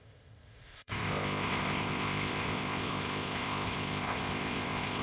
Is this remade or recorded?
remade